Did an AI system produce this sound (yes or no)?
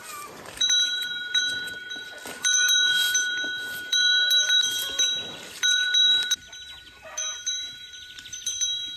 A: yes